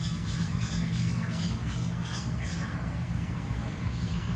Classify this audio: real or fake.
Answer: fake